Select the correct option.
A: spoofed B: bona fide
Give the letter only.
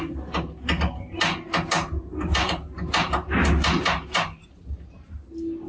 B